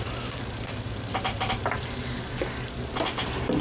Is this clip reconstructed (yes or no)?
no